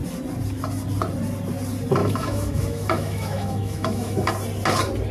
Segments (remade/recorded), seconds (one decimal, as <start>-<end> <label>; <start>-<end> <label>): 0.0-2.0 recorded; 2.0-4.3 remade; 4.3-5.1 recorded

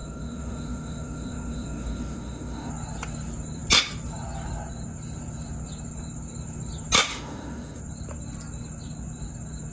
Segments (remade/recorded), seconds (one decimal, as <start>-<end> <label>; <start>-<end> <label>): 0.0-2.7 remade; 2.7-7.1 recorded; 7.1-7.8 remade; 7.8-9.7 recorded

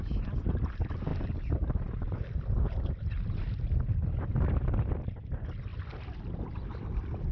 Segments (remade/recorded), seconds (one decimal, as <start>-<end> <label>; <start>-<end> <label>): 0.0-7.3 recorded

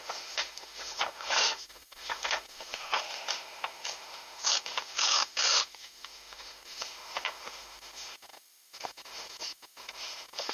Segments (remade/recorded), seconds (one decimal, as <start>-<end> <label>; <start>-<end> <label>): 0.0-10.5 remade

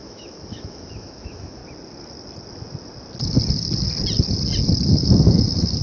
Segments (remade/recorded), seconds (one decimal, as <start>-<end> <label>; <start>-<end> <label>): 0.0-1.6 remade; 1.6-4.9 recorded; 4.9-5.8 remade

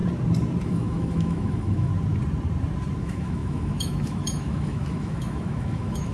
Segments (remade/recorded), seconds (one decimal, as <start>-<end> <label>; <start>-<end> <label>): 0.0-0.6 recorded; 0.6-1.9 remade; 1.9-3.0 recorded; 3.0-6.1 remade

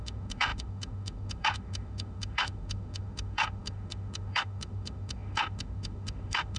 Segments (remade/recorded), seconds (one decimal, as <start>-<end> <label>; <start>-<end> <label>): 0.0-6.6 remade

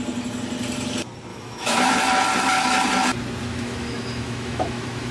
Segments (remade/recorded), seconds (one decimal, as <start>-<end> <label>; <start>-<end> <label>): 0.0-1.3 recorded; 1.3-2.0 remade; 2.0-3.4 recorded; 3.4-5.1 remade